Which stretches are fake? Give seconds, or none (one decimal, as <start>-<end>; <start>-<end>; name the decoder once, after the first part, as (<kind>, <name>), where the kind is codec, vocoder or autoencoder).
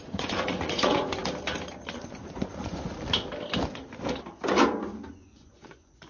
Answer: 0.0-1.2 (vocoder, Vocos); 2.0-2.9; 5.1-6.1